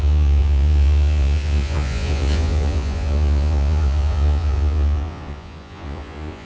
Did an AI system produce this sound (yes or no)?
yes